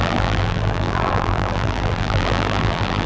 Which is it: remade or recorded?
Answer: remade